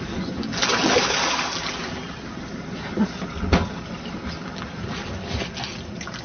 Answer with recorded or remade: recorded